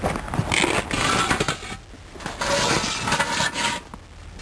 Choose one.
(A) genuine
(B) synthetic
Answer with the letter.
A